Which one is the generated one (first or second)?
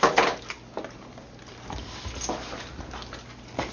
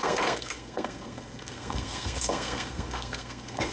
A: second